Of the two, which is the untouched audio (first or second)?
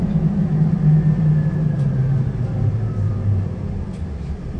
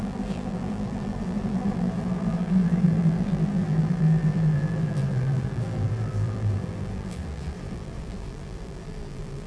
first